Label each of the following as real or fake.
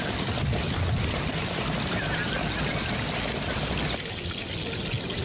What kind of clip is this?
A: real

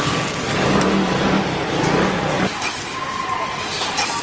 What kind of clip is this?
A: real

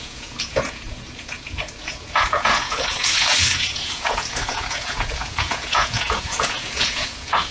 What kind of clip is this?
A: fake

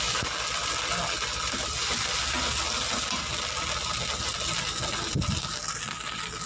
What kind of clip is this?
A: real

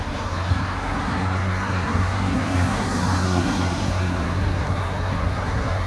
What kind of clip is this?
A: fake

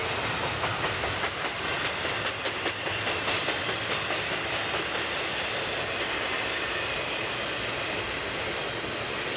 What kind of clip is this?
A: real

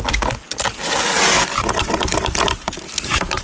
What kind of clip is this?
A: real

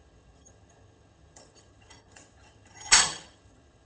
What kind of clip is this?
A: fake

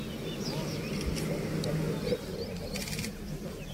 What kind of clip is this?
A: real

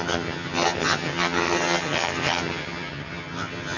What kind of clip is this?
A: fake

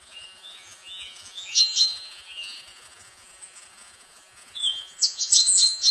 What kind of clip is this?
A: fake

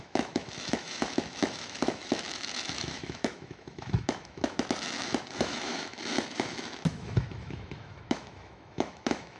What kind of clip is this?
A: fake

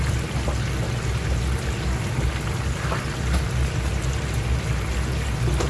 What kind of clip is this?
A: real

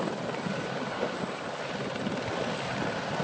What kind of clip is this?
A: real